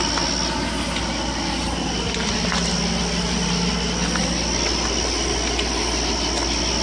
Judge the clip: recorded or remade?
recorded